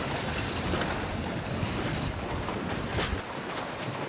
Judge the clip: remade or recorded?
recorded